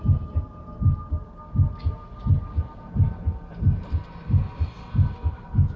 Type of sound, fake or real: real